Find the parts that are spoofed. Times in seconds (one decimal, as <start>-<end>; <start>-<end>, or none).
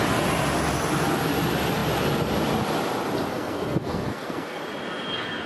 3.3-4.6